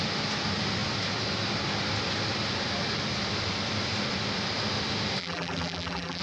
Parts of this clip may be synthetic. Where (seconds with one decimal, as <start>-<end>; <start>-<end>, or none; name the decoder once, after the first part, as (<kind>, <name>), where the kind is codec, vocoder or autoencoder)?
5.2-6.2 (vocoder, BigVGAN v2)